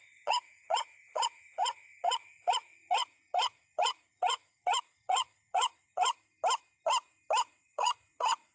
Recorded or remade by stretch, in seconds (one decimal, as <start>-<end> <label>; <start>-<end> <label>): 0.0-6.1 remade; 6.1-7.4 recorded; 7.4-8.5 remade